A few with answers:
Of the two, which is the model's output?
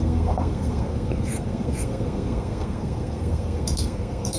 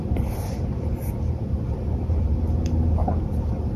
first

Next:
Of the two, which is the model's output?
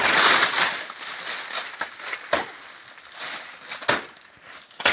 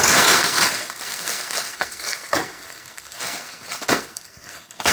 second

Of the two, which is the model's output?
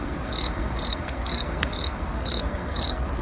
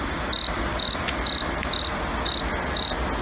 first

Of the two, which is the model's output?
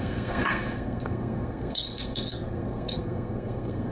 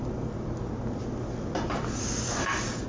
first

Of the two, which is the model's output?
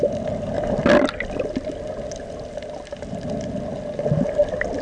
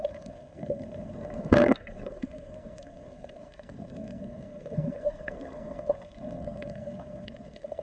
second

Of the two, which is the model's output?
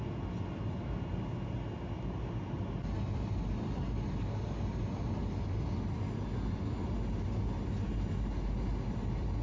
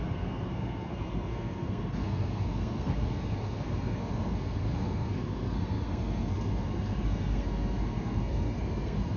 second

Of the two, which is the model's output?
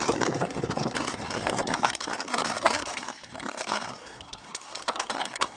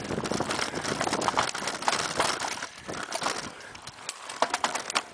first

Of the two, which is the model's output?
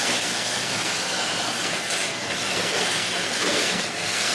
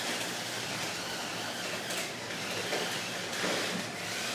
first